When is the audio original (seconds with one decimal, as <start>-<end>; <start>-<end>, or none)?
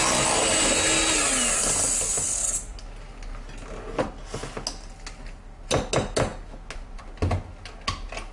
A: 0.0-8.3